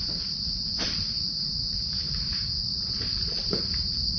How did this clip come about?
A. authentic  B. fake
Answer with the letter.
B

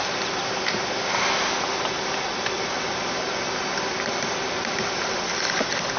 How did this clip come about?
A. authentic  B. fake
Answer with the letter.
A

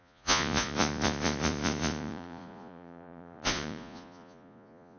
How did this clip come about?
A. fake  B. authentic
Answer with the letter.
A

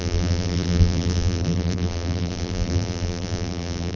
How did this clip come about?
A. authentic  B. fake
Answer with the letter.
B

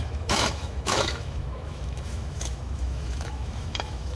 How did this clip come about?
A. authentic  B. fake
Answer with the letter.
B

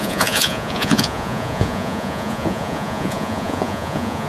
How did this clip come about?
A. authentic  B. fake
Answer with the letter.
B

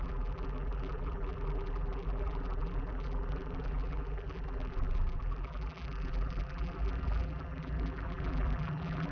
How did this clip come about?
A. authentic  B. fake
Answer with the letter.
B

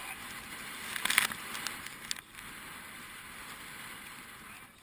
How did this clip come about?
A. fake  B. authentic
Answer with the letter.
B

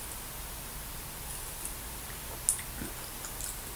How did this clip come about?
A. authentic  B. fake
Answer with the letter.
A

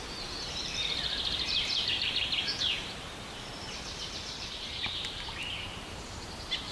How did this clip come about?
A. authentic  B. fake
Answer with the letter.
B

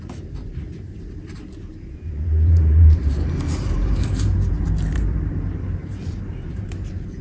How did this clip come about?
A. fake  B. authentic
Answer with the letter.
A